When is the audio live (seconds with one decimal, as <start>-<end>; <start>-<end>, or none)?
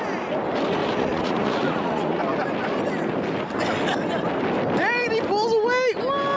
0.0-0.8; 2.2-6.4